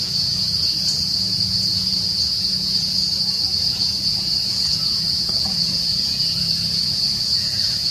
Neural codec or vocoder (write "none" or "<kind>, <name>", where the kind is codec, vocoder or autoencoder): vocoder, Vocos